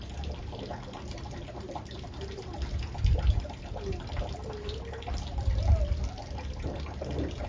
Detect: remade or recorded recorded